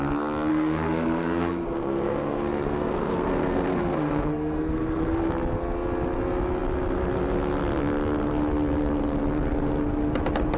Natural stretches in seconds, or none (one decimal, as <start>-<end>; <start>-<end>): 0.0-0.5; 5.3-10.6